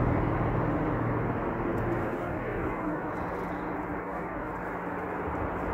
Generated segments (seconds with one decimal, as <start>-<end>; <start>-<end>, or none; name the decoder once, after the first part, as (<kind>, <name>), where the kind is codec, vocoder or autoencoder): 2.0-3.1 (codec, DAC); 4.0-4.5

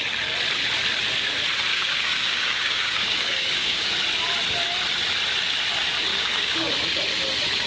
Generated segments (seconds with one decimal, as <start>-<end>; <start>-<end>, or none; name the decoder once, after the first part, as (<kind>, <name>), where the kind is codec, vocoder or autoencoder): 1.7-3.9 (codec, DAC); 6.1-6.7

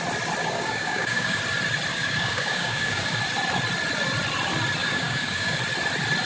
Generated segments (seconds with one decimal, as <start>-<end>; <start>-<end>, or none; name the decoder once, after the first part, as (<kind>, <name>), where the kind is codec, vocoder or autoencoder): 0.4-1.4 (codec, DAC); 1.9-3.2; 4.8-5.6

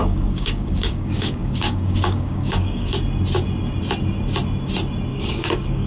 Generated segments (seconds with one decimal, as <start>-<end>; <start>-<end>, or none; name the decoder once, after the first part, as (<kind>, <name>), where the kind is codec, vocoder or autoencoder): 0.0-2.9 (codec, DAC); 5.1-5.9

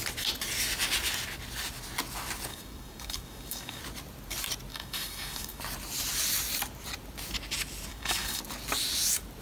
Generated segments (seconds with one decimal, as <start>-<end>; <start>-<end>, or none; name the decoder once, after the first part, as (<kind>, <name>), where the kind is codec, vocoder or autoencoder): 2.5-3.8 (codec, DAC); 4.7-5.6; 7.9-8.4

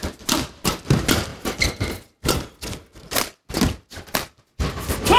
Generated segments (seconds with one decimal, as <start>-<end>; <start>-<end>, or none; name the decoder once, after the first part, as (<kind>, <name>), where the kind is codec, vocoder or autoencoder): none

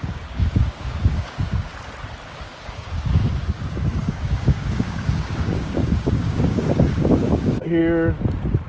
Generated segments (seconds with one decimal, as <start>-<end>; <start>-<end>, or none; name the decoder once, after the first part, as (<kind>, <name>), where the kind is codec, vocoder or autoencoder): 0.0-1.7 (codec, DAC); 2.3-7.8

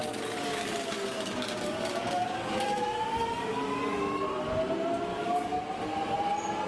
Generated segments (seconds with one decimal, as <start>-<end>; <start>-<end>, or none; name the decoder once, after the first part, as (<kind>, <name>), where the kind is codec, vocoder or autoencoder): 0.0-4.0 (codec, DAC); 5.1-5.6